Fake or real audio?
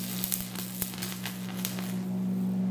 real